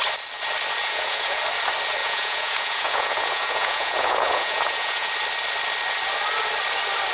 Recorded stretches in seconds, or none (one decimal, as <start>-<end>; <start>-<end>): 0.0-0.8; 1.4-2.0; 5.1-7.1